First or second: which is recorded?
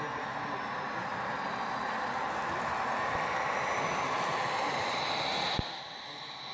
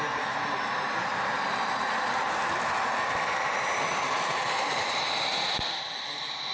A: first